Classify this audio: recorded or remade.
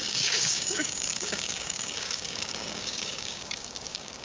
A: remade